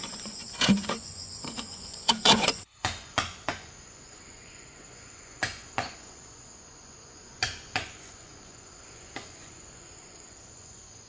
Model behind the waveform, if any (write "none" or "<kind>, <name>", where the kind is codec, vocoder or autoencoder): vocoder, Vocos